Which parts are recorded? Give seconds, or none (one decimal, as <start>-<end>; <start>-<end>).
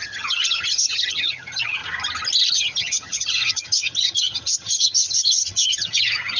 1.8-2.5